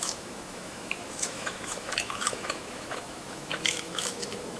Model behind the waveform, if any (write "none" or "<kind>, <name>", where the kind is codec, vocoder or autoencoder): autoencoder, DAC-VAE